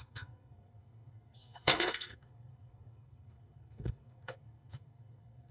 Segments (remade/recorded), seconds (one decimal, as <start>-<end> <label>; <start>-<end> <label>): 0.0-5.5 remade